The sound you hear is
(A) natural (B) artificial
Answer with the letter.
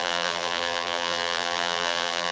B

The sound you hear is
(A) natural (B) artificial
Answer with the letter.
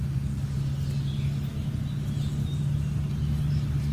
A